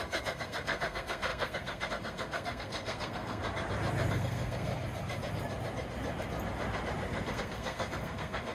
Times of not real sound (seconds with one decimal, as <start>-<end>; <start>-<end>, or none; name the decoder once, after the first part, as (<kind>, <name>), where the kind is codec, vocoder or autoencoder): 0.0-3.4 (codec, SNAC); 4.1-4.7; 7.3-8.5